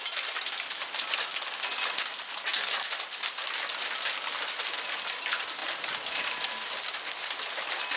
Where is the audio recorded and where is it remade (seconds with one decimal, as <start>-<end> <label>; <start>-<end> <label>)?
0.0-8.0 recorded